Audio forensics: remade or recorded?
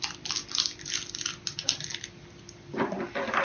recorded